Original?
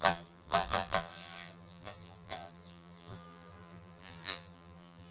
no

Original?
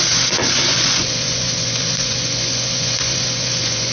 no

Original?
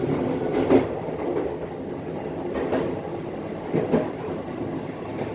yes